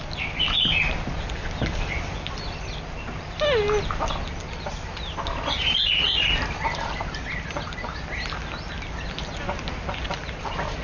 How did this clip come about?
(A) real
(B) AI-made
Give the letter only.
A